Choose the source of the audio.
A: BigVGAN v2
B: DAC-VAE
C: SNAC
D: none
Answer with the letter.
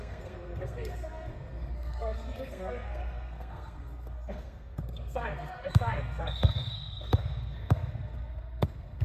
C